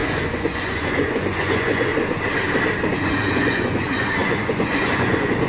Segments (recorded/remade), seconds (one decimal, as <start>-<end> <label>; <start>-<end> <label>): 0.0-1.9 remade; 1.9-2.9 recorded; 2.9-5.5 remade